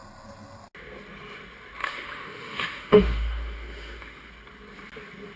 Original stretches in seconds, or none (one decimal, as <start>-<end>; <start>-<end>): 0.0-1.8; 4.3-5.4